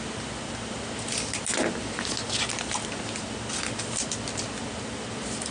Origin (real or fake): real